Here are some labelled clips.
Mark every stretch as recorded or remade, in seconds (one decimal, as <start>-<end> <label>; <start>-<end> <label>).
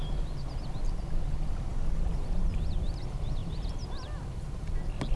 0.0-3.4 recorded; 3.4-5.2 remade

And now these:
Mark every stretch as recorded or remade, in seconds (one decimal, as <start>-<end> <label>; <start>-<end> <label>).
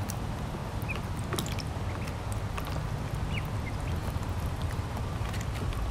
0.0-0.6 remade; 0.6-4.1 recorded; 4.1-5.9 remade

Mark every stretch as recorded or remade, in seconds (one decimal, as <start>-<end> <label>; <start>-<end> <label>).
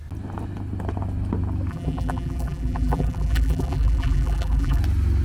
0.0-1.7 recorded; 1.7-4.8 remade; 4.8-5.2 recorded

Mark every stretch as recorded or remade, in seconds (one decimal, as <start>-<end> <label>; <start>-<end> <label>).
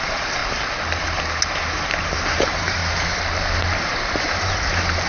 0.0-0.4 remade; 0.4-2.0 recorded; 2.0-2.8 remade; 2.8-4.2 recorded; 4.2-5.1 remade